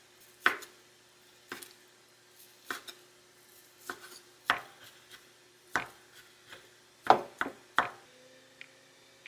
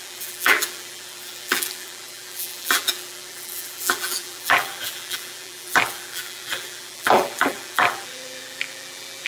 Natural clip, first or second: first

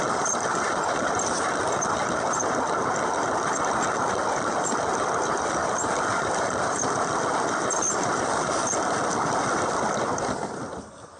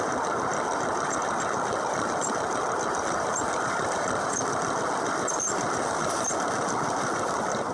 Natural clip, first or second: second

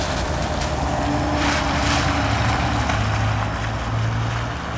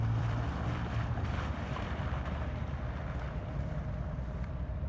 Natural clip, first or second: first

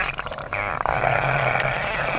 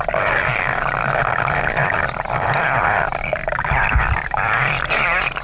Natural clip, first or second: first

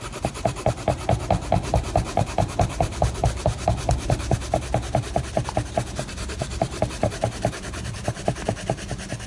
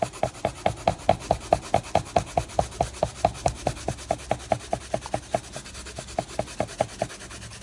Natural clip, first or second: second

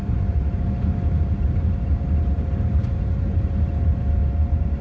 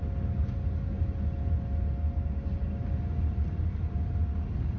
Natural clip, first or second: second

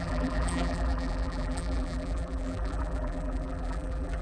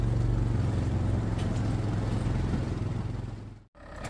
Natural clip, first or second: second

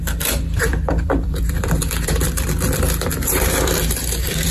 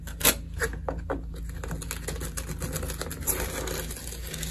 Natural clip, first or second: second